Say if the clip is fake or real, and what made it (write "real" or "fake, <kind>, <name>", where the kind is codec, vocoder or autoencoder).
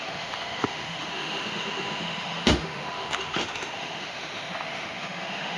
fake, autoencoder, DAC-VAE